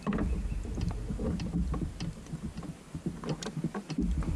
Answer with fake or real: real